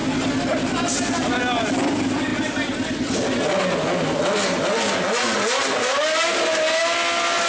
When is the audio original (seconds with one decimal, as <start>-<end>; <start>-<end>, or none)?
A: 0.0-7.5